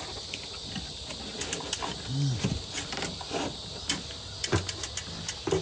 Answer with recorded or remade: recorded